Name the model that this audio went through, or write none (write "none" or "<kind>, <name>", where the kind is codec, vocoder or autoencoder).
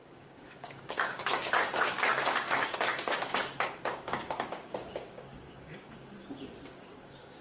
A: codec, DAC